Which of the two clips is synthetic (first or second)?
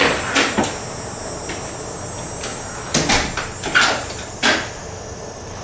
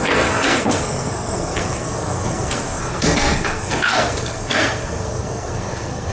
second